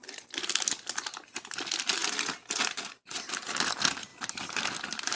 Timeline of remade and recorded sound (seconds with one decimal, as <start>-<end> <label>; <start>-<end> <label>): 0.0-5.2 recorded